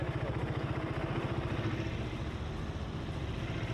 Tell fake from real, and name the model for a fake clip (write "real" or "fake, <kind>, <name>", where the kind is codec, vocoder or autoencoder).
real